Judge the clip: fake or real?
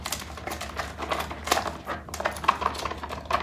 real